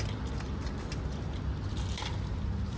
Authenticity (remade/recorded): recorded